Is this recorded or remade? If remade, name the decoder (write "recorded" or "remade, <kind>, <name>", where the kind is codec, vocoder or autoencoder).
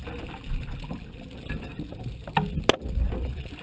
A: recorded